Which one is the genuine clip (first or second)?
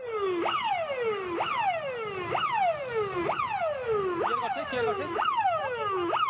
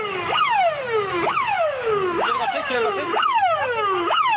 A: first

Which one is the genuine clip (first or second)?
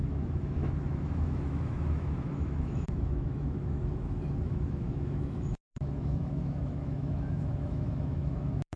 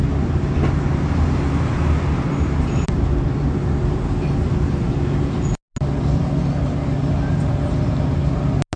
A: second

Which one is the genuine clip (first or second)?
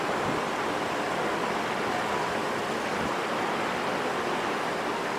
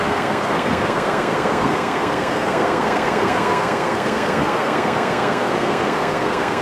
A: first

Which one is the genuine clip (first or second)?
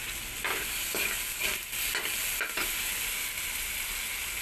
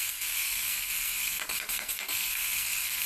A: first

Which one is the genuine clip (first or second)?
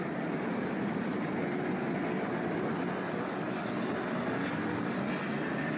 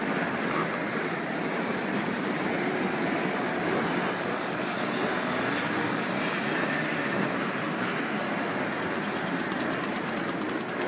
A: first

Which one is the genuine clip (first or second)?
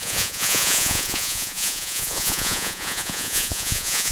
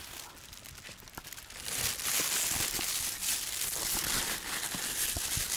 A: second